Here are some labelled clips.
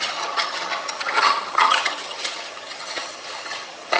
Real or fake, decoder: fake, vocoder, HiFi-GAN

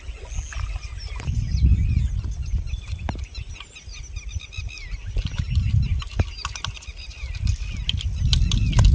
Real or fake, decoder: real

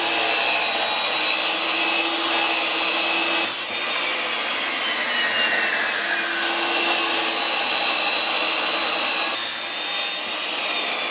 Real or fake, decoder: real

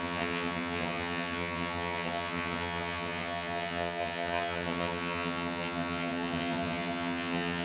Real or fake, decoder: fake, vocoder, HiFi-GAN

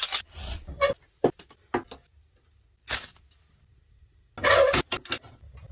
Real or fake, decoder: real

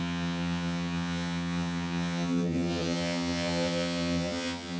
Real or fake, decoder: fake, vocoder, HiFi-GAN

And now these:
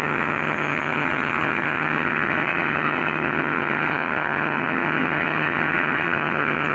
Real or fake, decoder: fake, vocoder, HiFi-GAN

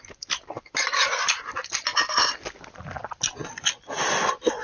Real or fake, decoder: real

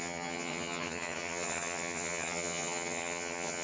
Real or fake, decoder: fake, vocoder, HiFi-GAN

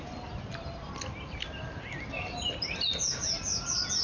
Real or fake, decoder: real